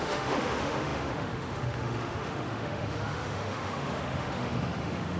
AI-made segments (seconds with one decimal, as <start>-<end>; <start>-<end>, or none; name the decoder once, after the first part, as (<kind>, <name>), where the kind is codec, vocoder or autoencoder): 0.0-5.2 (autoencoder, DAC-VAE)

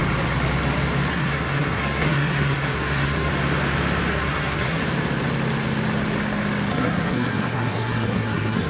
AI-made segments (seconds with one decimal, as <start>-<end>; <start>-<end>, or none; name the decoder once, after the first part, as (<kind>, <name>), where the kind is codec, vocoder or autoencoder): 1.1-3.3 (codec, SNAC); 4.1-4.8; 6.7-8.7